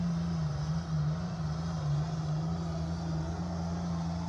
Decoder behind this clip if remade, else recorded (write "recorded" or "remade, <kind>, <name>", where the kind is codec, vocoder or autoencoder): recorded